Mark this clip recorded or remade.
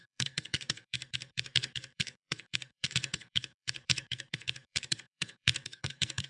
remade